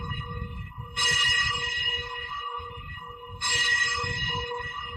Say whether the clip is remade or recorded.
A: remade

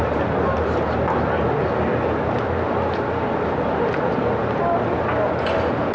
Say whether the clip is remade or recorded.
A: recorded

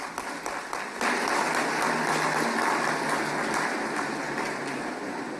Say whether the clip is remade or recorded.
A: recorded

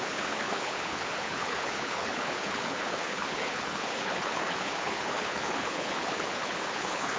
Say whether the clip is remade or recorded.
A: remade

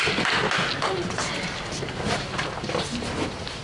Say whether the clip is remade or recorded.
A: recorded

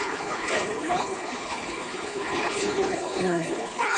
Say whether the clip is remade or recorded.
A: remade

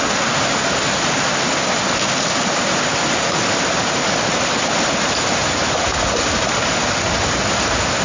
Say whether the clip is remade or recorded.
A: recorded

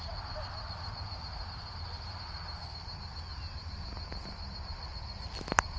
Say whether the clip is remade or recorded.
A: recorded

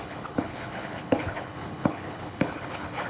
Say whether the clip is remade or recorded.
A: remade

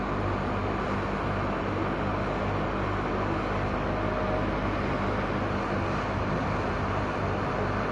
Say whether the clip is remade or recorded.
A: recorded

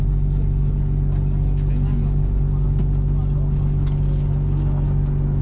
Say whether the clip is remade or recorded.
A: recorded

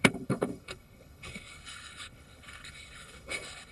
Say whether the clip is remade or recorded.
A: remade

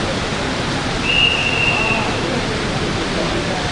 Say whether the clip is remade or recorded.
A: recorded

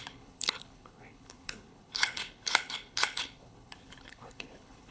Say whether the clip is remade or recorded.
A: remade